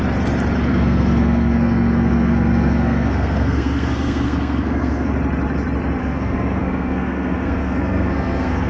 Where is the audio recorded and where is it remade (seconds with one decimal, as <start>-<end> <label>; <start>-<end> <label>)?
0.0-0.7 recorded; 0.7-5.1 remade; 5.1-6.0 recorded; 6.0-8.7 remade